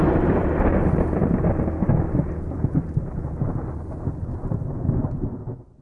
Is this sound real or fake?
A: fake